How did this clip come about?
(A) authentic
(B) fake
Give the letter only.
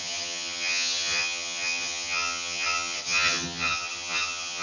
B